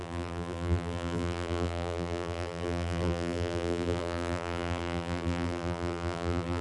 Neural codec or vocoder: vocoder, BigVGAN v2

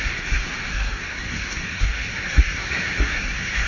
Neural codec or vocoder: codec, SNAC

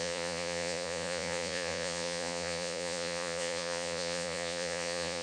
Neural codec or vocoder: vocoder, Vocos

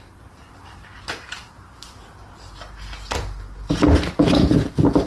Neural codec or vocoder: none